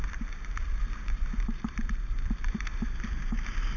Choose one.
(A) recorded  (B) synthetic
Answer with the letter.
B